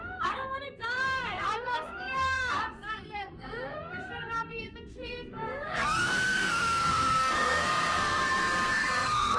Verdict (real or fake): fake